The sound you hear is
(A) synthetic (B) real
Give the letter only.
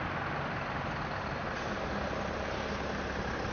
B